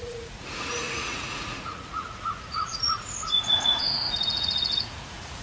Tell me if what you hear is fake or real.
fake